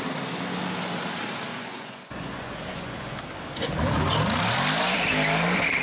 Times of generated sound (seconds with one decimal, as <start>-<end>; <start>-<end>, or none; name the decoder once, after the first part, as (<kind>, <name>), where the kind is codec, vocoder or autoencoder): 1.5-3.2 (vocoder, Vocos)